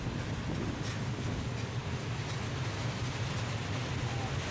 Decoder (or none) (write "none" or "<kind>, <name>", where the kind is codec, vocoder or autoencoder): none